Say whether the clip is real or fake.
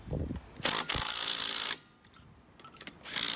real